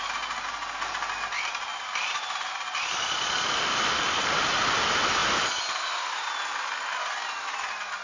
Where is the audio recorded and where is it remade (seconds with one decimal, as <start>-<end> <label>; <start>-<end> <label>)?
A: 0.0-8.0 recorded